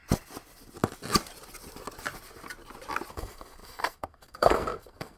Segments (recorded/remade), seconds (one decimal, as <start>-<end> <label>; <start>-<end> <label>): 0.0-3.1 recorded; 3.1-5.2 remade